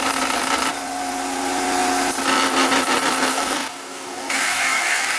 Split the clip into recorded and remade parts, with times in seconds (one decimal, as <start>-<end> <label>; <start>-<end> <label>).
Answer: 0.0-3.3 recorded; 3.3-5.2 remade